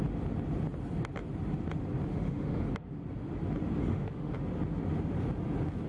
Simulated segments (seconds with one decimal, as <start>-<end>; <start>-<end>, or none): 2.1-2.7; 3.8-4.3